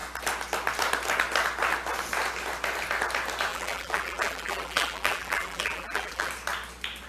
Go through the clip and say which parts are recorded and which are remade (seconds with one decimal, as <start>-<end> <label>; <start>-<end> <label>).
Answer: 0.0-3.5 recorded; 3.5-6.3 remade; 6.3-7.1 recorded